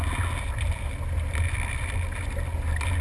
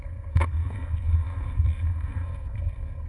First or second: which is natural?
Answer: first